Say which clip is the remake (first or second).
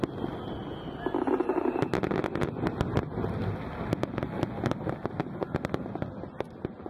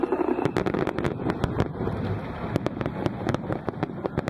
second